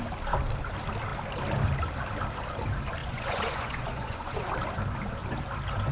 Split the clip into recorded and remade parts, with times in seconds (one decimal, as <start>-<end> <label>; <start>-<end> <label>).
0.0-3.0 recorded; 3.0-4.5 remade; 4.5-5.9 recorded

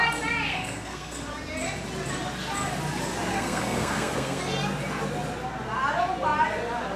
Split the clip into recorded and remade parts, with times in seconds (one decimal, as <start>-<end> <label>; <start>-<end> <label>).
0.0-0.5 recorded; 0.5-1.3 remade; 1.3-3.3 recorded; 3.3-4.4 remade; 4.4-7.0 recorded

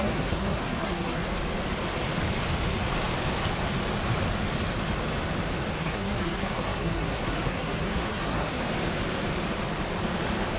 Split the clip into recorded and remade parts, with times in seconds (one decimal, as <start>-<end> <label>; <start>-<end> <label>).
0.0-1.2 remade; 1.2-5.8 recorded; 5.8-8.6 remade; 8.6-10.6 recorded

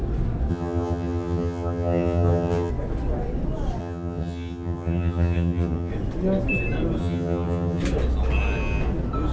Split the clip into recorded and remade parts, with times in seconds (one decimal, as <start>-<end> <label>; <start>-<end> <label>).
0.0-0.5 recorded; 0.5-2.7 remade; 2.7-3.8 recorded; 3.8-5.9 remade; 5.9-7.0 recorded; 7.0-7.8 remade; 7.8-9.3 recorded